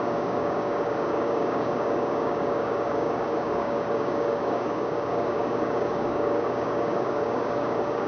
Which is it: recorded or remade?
remade